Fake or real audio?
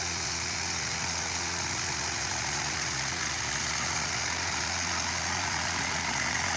fake